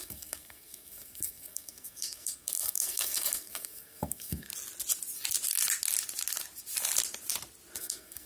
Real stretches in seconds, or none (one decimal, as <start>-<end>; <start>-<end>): 4.5-7.8